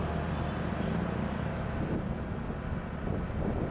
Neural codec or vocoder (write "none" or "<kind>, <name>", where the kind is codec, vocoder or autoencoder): none